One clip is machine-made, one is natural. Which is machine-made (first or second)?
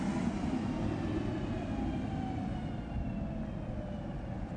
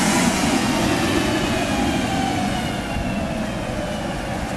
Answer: second